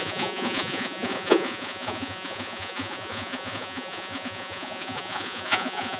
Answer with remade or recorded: remade